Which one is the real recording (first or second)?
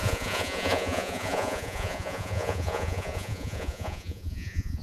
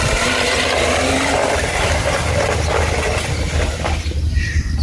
second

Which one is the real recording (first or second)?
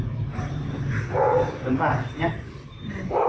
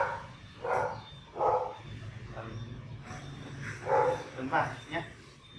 second